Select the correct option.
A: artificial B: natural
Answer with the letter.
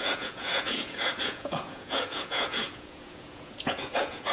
A